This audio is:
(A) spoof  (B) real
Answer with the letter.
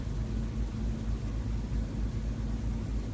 B